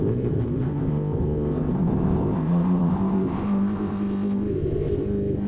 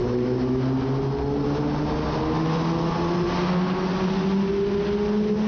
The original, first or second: second